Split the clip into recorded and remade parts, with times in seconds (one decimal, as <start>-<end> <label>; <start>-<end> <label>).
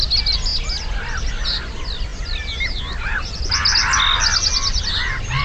0.0-5.4 recorded